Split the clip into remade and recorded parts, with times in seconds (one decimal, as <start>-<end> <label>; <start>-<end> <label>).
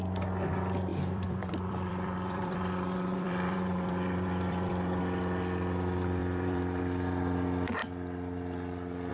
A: 0.0-0.9 recorded; 0.9-5.0 remade; 5.0-6.2 recorded; 6.2-6.8 remade; 6.8-9.1 recorded